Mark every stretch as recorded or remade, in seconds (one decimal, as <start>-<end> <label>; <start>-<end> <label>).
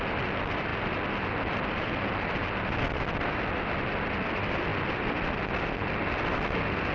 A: 0.0-6.9 recorded